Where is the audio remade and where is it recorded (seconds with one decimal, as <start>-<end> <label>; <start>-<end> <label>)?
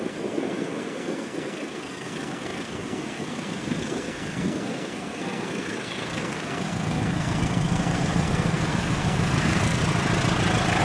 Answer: 0.0-9.8 remade; 9.8-10.8 recorded